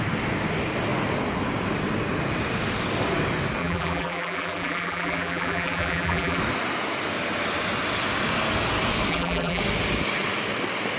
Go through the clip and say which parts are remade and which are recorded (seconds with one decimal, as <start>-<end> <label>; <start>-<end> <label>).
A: 0.0-3.6 recorded; 3.6-6.4 remade; 6.4-9.1 recorded; 9.1-9.6 remade; 9.6-11.0 recorded

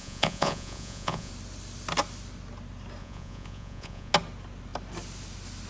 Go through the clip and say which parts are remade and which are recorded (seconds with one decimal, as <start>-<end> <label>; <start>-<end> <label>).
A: 0.0-1.3 remade; 1.3-3.0 recorded; 3.0-4.1 remade; 4.1-5.7 recorded

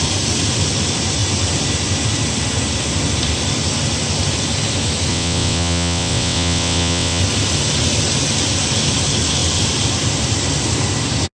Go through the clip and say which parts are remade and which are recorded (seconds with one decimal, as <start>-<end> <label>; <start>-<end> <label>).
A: 0.0-5.1 recorded; 5.1-7.2 remade; 7.2-11.3 recorded

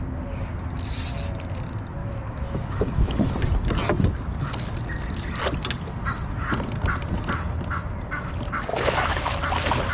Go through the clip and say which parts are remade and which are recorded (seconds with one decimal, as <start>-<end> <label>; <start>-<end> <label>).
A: 0.0-2.0 recorded; 2.0-3.3 remade; 3.3-8.7 recorded; 8.7-9.3 remade; 9.3-9.9 recorded

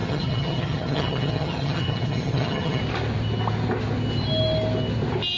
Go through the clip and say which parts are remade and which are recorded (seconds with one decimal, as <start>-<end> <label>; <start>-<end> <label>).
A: 0.0-2.8 remade; 2.8-5.4 recorded